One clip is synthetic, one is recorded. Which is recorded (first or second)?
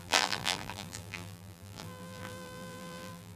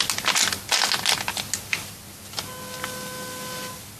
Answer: second